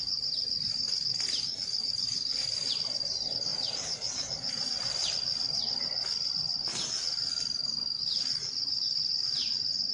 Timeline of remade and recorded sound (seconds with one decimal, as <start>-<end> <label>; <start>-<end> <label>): 0.0-9.9 recorded